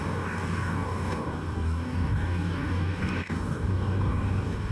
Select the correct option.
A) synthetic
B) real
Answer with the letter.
A